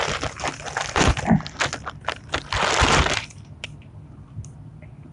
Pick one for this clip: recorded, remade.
recorded